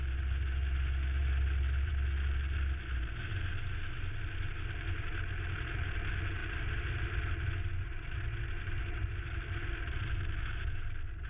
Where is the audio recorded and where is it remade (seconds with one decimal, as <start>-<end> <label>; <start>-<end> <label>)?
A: 0.0-1.2 recorded; 1.2-1.9 remade; 1.9-11.3 recorded